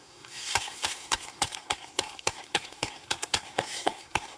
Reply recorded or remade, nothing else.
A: remade